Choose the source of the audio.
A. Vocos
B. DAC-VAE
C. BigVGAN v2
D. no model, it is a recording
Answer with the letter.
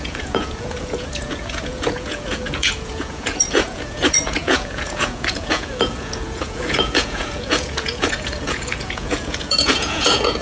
A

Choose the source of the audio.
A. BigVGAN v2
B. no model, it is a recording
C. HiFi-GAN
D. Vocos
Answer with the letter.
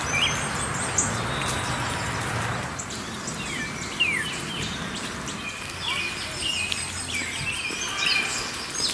B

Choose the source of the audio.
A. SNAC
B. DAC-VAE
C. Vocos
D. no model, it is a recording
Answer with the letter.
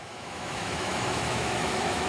B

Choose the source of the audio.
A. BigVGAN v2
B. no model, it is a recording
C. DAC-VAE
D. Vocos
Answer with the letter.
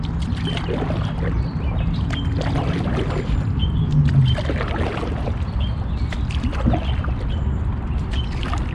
B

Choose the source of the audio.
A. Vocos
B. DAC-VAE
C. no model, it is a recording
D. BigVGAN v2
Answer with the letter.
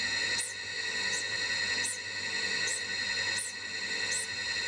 C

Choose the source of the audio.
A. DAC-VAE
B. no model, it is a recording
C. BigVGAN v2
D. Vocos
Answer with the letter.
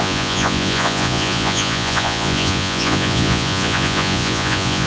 D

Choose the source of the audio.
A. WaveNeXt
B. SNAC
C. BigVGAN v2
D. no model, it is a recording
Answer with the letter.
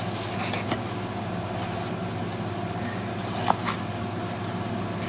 D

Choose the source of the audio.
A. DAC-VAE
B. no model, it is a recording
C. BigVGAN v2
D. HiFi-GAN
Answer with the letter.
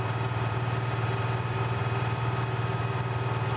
C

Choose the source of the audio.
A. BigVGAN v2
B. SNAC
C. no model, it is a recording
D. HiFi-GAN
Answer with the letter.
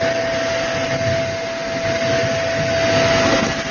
C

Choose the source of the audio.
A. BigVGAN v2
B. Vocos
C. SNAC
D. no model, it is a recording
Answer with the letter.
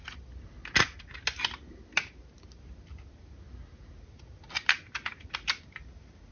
D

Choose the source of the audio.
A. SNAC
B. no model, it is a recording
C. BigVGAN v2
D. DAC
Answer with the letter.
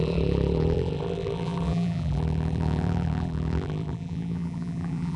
C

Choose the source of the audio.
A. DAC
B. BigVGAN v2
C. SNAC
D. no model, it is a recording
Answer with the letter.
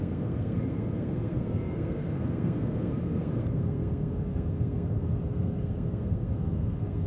C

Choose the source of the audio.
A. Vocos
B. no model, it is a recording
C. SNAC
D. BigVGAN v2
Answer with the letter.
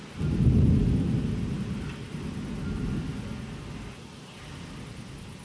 B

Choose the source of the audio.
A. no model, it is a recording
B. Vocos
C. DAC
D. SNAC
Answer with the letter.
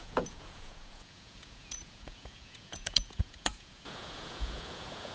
B